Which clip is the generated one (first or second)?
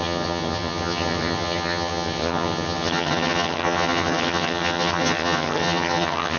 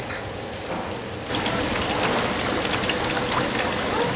first